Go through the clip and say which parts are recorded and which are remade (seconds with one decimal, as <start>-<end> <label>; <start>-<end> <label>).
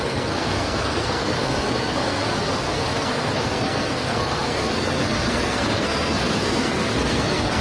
0.0-7.6 remade